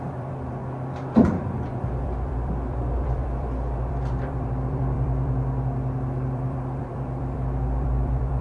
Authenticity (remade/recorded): remade